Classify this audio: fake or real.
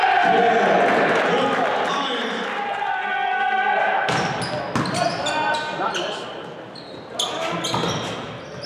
real